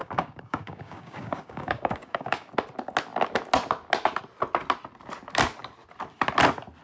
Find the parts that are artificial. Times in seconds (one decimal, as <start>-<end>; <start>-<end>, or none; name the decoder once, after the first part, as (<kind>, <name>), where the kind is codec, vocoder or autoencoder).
0.0-2.5 (codec, DAC)